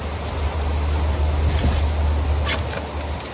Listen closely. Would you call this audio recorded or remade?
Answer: recorded